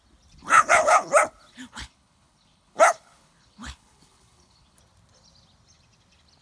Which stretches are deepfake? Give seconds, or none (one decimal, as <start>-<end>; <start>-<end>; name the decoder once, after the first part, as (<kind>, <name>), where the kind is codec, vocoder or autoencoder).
0.4-1.1 (codec, HILCodec); 1.5-4.8

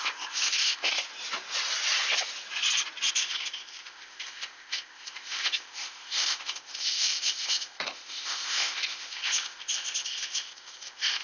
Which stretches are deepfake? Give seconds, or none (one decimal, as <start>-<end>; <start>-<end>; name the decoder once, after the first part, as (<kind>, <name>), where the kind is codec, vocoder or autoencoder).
0.0-1.1 (codec, ZipCodec); 3.1-11.2

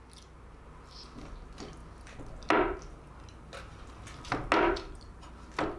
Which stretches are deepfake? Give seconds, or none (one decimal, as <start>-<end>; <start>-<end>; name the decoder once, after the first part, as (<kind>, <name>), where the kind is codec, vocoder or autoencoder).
none

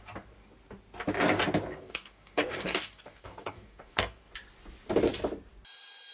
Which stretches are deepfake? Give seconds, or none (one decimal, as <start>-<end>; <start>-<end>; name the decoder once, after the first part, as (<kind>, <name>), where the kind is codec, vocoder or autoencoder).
1.7-4.3 (codec, DAC)

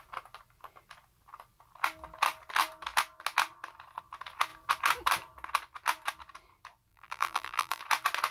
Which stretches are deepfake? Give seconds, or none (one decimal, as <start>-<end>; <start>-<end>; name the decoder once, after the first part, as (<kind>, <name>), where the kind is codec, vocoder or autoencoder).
6.9-7.8 (vocoder, BigVGAN v2)

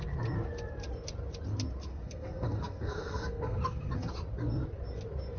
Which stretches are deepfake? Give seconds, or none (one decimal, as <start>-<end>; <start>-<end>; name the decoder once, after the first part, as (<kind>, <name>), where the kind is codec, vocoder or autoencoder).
1.9-4.1 (codec, SNAC)

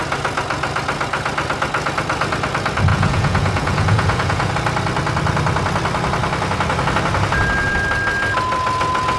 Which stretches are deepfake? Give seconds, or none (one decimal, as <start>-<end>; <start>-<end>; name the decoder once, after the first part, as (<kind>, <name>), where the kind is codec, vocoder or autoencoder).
2.9-4.5 (vocoder, Vocos)

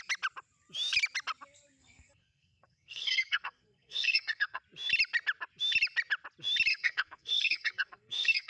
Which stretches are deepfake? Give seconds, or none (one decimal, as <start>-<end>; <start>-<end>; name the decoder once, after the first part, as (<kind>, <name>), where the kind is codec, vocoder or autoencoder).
1.8-4.6 (codec, SNAC); 6.7-8.5